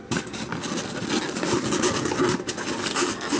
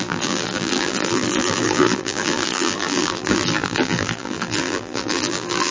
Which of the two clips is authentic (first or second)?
first